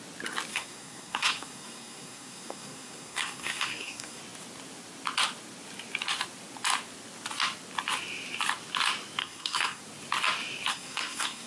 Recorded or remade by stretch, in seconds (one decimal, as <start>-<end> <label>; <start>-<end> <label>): 0.0-0.5 recorded; 0.5-4.2 remade; 4.2-9.2 recorded; 9.2-9.8 remade; 9.8-10.7 recorded; 10.7-11.5 remade